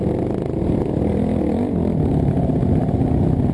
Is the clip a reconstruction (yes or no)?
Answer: no